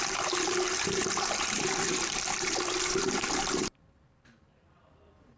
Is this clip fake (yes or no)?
yes